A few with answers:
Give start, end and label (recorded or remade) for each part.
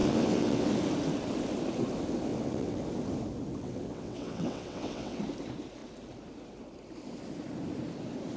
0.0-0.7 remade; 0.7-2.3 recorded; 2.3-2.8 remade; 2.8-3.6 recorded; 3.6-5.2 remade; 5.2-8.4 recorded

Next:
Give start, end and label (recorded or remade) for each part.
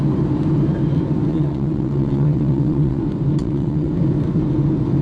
0.0-1.3 recorded; 1.3-3.0 remade; 3.0-3.4 recorded; 3.4-3.9 remade; 3.9-5.0 recorded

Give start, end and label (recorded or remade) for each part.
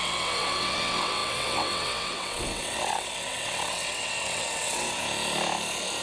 0.0-5.0 remade; 5.0-6.0 recorded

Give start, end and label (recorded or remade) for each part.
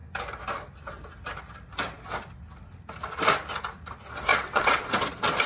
0.0-4.3 recorded; 4.3-5.1 remade; 5.1-5.5 recorded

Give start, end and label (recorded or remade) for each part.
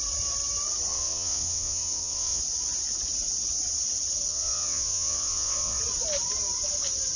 0.0-0.9 recorded; 0.9-2.4 remade; 2.4-4.3 recorded; 4.3-5.8 remade; 5.8-7.2 recorded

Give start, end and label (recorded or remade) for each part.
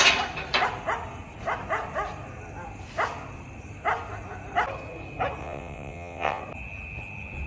0.0-5.4 recorded; 5.4-6.4 remade; 6.4-7.5 recorded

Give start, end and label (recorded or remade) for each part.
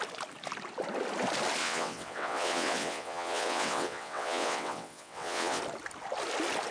0.0-1.6 recorded; 1.6-5.6 remade; 5.6-6.7 recorded